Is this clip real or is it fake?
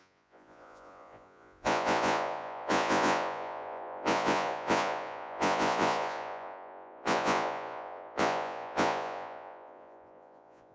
fake